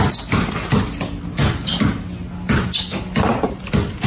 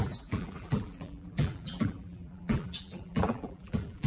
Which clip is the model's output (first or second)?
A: second